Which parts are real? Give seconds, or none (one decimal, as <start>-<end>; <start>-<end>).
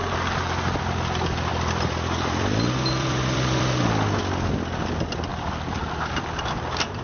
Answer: 0.0-1.5; 3.8-5.3